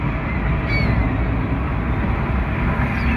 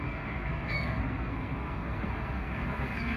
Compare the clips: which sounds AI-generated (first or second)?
second